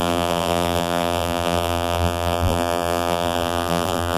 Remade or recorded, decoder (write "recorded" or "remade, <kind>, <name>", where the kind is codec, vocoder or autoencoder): remade, vocoder, BigVGAN v2